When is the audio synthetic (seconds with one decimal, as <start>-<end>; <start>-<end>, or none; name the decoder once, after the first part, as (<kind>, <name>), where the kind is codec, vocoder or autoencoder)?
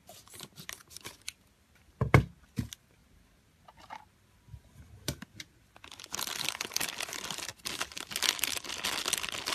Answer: none